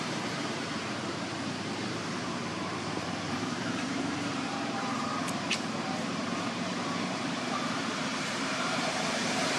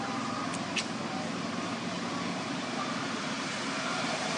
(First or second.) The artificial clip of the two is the first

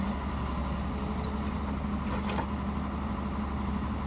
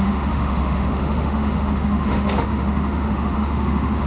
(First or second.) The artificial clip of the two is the second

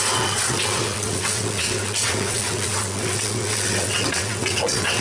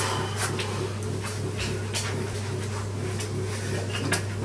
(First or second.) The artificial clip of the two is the first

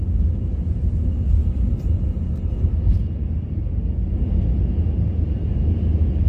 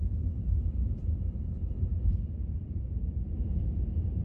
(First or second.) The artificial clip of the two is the second